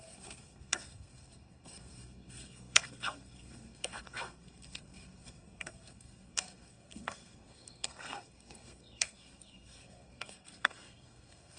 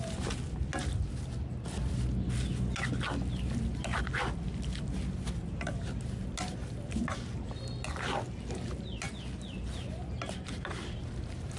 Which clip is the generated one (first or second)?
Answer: first